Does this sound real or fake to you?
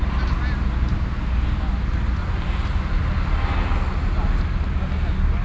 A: real